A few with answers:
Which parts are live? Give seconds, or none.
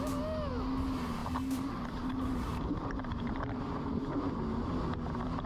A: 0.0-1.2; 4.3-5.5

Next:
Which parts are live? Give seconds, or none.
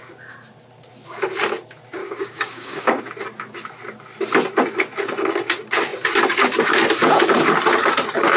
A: 0.0-2.0; 3.0-8.4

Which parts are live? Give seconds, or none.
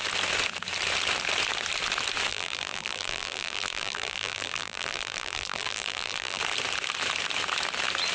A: 0.0-2.3; 6.4-8.1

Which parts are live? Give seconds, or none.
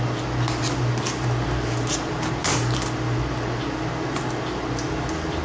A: 0.0-5.4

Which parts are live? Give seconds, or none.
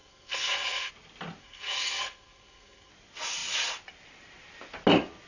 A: 0.9-1.4; 2.9-5.3